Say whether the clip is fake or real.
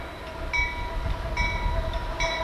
real